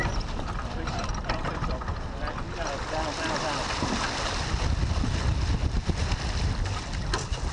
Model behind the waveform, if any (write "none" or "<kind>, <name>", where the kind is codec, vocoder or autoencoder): none